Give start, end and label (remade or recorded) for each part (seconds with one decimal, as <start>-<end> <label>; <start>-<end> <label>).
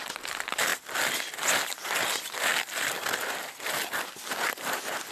0.0-5.1 recorded